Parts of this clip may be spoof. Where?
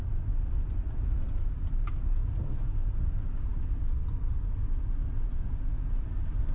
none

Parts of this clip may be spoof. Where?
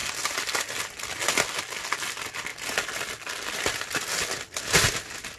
none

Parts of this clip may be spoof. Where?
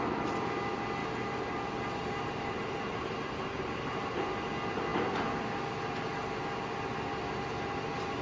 1.0-3.0 (vocoder, BigVGAN v2)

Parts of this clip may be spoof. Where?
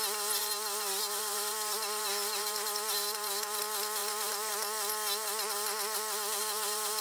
0.4-3.6 (vocoder, BigVGAN v2); 4.0-4.5; 6.4-7.0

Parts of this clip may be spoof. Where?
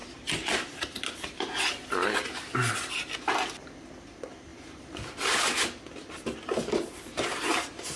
4.5-5.3 (vocoder, BigVGAN v2)